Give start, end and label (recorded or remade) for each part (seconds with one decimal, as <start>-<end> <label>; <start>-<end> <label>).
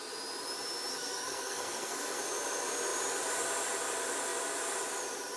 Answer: 0.0-0.9 recorded; 0.9-2.2 remade; 2.2-5.4 recorded